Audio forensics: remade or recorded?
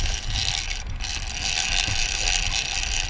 recorded